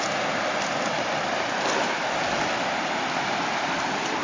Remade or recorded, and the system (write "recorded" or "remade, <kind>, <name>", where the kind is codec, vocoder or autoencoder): recorded